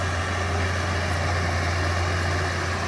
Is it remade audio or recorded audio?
recorded